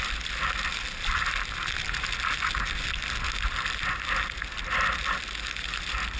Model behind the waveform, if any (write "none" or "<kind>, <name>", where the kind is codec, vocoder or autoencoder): none